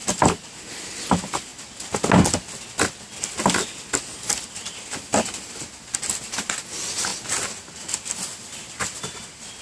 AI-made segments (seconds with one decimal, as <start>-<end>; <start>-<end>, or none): none